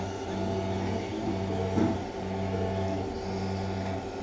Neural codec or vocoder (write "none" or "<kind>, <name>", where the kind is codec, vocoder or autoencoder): none